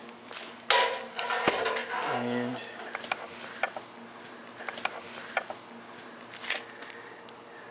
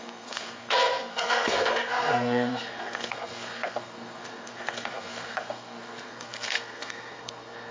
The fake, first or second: second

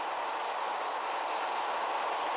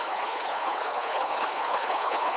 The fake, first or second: second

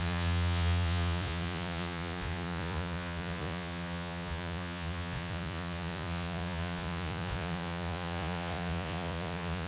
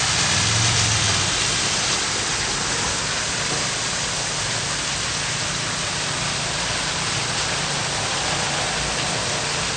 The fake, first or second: first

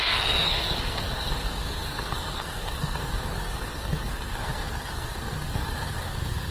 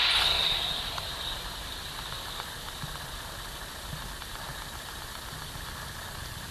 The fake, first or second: first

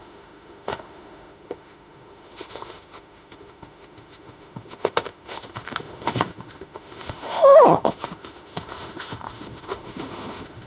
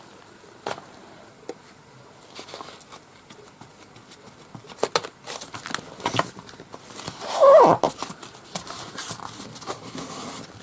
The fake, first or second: first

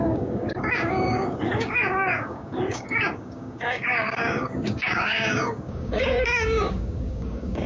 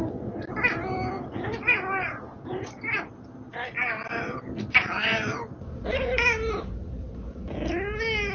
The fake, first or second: first